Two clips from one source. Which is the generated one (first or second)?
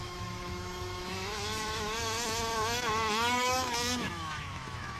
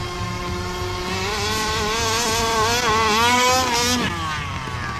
first